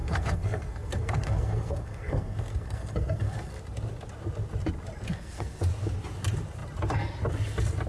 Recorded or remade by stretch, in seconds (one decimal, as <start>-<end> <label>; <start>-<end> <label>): 0.0-3.6 remade; 3.6-5.1 recorded; 5.1-5.6 remade; 5.6-7.9 recorded